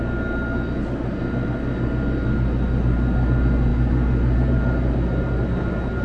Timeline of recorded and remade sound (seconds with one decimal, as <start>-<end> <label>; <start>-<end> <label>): 0.0-6.0 recorded